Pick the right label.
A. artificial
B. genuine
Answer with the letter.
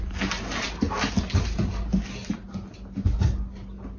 B